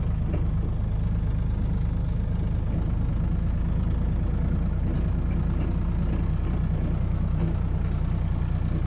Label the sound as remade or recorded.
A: recorded